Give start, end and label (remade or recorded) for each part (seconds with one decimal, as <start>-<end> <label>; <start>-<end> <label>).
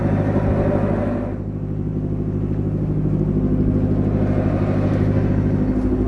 0.0-6.1 recorded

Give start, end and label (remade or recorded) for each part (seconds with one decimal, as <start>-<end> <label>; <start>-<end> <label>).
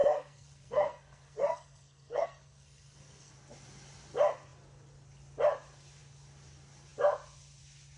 0.0-3.3 remade; 3.3-8.0 recorded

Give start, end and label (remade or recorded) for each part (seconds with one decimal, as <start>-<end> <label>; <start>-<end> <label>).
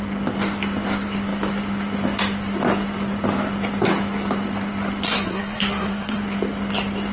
0.0-5.1 recorded; 5.1-6.2 remade; 6.2-7.1 recorded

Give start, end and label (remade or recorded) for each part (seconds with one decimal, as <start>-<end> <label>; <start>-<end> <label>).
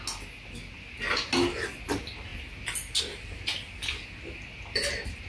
0.0-5.3 recorded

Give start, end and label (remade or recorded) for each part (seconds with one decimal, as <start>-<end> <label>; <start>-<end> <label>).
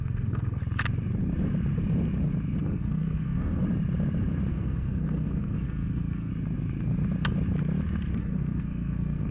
0.0-0.6 remade; 0.6-2.6 recorded; 2.6-3.6 remade; 3.6-4.5 recorded; 4.5-6.3 remade; 6.3-8.2 recorded; 8.2-9.3 remade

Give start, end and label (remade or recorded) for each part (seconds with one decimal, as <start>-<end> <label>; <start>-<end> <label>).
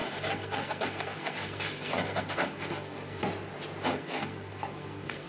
0.0-3.2 remade; 3.2-3.9 recorded; 3.9-5.3 remade